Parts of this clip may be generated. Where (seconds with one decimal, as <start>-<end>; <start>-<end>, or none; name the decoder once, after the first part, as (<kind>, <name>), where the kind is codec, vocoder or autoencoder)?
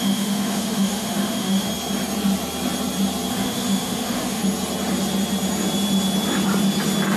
0.0-1.7 (autoencoder, DAC-VAE); 3.3-4.4